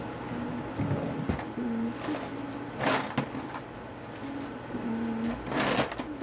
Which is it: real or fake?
real